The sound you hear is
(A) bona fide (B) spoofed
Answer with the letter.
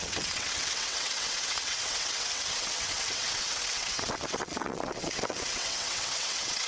B